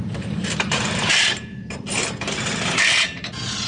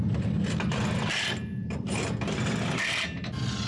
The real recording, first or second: second